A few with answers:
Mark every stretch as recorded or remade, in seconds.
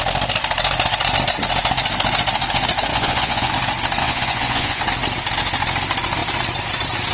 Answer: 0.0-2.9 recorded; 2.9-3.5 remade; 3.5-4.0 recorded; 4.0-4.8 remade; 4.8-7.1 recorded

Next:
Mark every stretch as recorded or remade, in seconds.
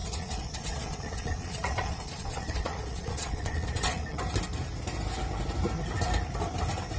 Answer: 0.0-4.2 remade; 4.2-7.0 recorded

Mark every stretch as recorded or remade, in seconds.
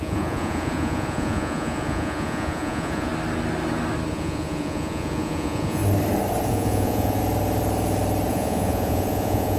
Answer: 0.0-3.1 remade; 3.1-4.1 recorded; 4.1-5.8 remade; 5.8-6.5 recorded; 6.5-7.2 remade; 7.2-8.3 recorded; 8.3-9.6 remade